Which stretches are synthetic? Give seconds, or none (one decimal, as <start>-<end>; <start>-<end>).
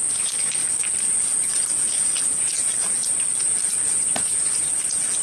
0.6-3.7